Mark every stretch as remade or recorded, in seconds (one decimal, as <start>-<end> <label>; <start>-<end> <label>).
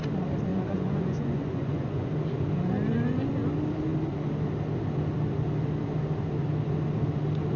0.0-0.5 recorded; 0.5-2.1 remade; 2.1-7.6 recorded